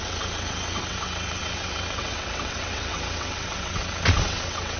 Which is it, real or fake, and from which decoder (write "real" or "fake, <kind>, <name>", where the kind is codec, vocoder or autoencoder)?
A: fake, vocoder, WaveNeXt